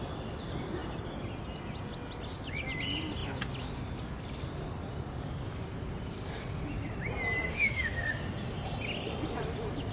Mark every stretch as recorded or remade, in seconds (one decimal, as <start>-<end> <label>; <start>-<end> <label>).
0.0-7.5 recorded; 7.5-8.1 remade; 8.1-9.9 recorded